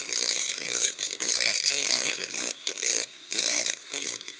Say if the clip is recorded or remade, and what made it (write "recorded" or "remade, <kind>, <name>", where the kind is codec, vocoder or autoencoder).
remade, codec, SNAC